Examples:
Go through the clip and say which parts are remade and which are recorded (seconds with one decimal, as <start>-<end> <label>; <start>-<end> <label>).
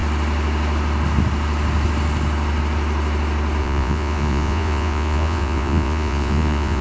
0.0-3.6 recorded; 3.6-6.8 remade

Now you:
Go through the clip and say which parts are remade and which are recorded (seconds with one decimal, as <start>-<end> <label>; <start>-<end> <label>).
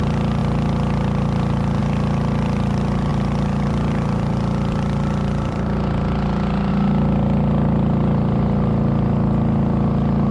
0.0-10.3 recorded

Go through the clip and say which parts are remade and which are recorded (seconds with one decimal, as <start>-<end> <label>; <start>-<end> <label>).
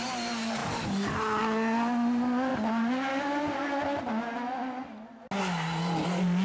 0.0-6.4 recorded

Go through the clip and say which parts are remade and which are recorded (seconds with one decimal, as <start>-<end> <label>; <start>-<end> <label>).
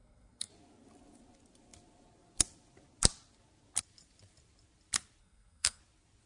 0.0-0.5 remade; 0.5-5.2 recorded; 5.2-5.8 remade; 5.8-6.3 recorded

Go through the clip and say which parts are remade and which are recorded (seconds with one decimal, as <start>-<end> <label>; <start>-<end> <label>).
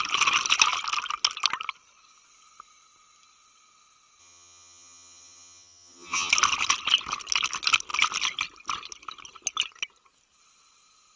0.0-4.2 recorded; 4.2-6.3 remade; 6.3-11.2 recorded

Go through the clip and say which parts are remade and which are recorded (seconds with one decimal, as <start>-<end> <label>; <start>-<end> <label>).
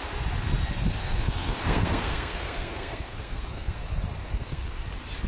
0.0-1.0 recorded; 1.0-3.8 remade; 3.8-4.2 recorded; 4.2-4.8 remade; 4.8-5.3 recorded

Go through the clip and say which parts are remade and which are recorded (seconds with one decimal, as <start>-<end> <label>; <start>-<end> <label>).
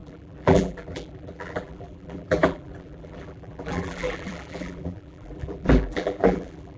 0.0-6.8 remade